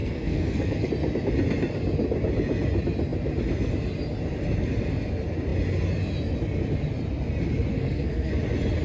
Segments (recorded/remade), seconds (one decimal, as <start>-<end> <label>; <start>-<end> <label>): 0.0-0.9 remade; 0.9-7.7 recorded; 7.7-8.3 remade; 8.3-8.8 recorded